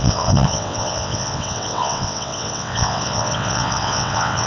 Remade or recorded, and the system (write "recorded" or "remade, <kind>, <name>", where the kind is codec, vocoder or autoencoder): remade, vocoder, WaveNeXt